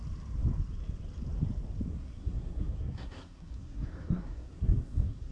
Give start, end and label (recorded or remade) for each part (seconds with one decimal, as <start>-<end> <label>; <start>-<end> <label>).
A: 0.0-1.9 recorded; 1.9-5.3 remade